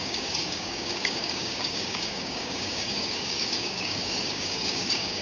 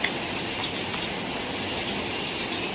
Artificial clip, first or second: first